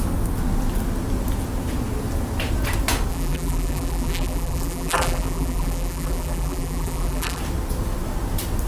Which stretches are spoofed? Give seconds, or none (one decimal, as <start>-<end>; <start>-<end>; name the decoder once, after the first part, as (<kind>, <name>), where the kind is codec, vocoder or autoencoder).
3.1-7.4 (vocoder, BigVGAN v2)